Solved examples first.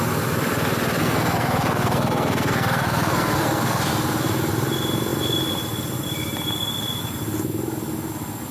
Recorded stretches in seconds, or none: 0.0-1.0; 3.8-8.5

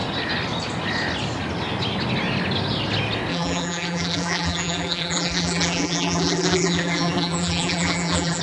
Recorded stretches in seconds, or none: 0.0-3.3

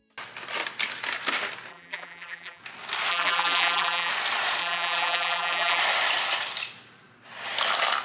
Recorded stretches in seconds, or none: 0.0-1.7; 2.6-3.1; 4.1-4.6; 5.8-8.0